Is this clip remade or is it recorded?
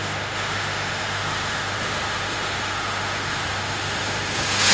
remade